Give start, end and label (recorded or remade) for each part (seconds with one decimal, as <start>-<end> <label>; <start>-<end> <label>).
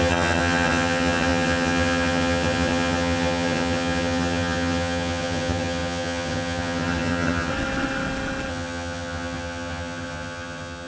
0.0-7.5 remade; 7.5-8.5 recorded; 8.5-10.9 remade